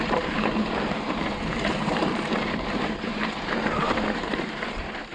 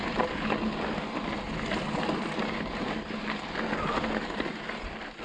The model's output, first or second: first